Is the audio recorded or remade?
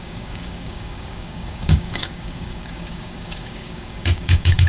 remade